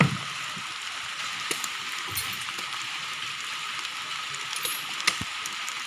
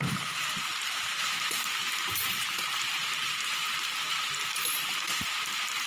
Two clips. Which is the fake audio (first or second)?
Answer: second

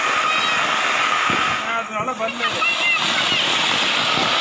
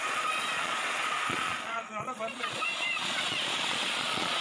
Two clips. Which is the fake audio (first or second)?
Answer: second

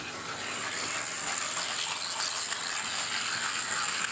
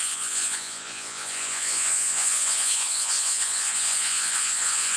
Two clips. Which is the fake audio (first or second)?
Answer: second